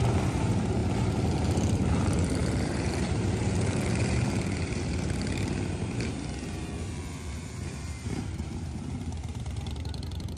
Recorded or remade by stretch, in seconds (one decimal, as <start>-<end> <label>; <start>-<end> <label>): 0.0-0.8 remade; 0.8-1.3 recorded; 1.3-10.4 remade